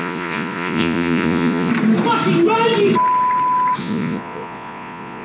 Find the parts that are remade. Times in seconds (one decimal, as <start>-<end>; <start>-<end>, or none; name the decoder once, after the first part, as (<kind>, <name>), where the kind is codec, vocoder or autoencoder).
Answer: 0.0-1.7 (vocoder, Vocos); 3.8-5.2